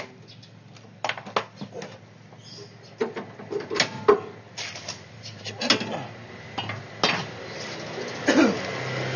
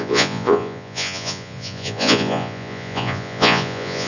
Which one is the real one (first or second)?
first